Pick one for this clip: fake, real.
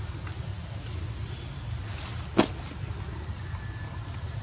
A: real